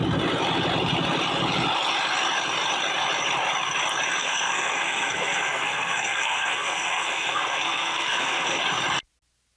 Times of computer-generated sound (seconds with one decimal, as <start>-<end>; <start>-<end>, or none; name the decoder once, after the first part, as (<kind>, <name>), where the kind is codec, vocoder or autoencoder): 4.2-8.6 (codec, SNAC)